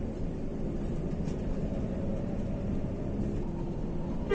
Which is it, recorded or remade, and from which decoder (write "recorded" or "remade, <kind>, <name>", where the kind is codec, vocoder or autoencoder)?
remade, vocoder, BigVGAN v2